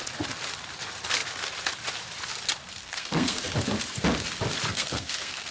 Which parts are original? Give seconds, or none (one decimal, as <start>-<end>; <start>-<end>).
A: 0.0-2.8; 3.4-4.7